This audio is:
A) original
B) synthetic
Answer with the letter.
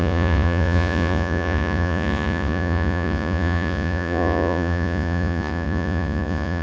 B